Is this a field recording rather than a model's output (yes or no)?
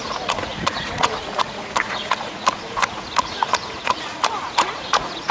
no